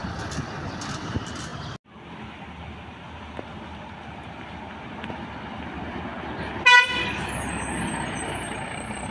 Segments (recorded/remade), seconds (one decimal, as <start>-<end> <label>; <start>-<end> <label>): 0.0-7.0 recorded; 7.0-7.8 remade; 7.8-9.1 recorded